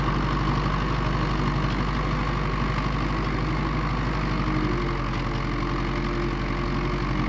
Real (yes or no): yes